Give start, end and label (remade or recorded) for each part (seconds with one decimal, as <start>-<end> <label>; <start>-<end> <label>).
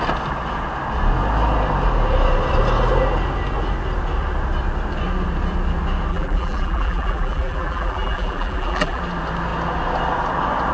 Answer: 0.0-6.1 recorded; 6.1-9.0 remade; 9.0-10.7 recorded